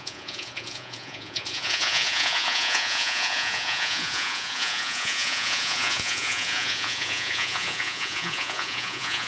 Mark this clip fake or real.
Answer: fake